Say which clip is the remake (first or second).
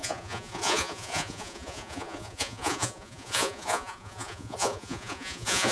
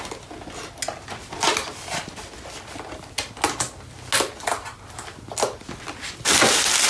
first